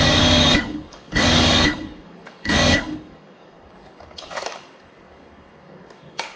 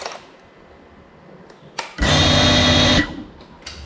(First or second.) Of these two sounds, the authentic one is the second